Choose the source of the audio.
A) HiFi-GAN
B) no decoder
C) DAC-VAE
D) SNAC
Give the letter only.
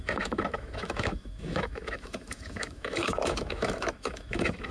C